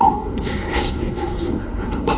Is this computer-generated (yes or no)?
yes